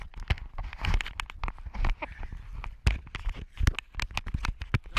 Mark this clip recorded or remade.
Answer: recorded